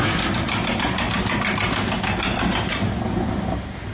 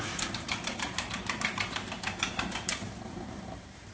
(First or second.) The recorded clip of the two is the first